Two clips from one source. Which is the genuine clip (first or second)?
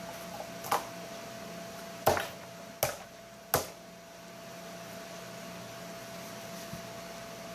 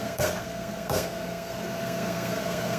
first